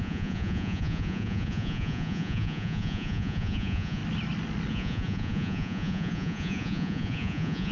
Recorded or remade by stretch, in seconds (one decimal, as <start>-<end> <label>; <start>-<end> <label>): 0.0-4.0 remade; 4.0-4.7 recorded; 4.7-7.7 remade